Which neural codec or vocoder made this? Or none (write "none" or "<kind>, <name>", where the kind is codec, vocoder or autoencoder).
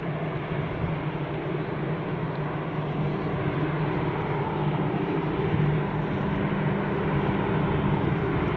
none